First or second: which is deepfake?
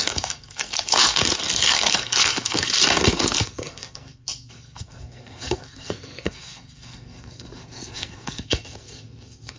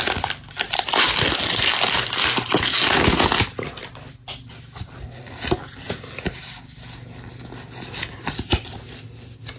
first